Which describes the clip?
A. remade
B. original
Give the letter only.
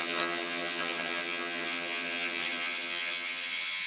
A